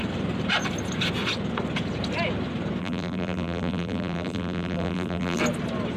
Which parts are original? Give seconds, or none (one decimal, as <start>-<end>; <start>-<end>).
0.0-2.8; 5.4-6.0